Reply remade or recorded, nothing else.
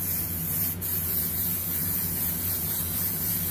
remade